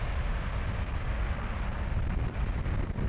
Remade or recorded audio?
recorded